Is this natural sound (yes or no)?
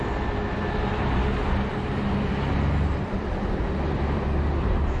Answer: yes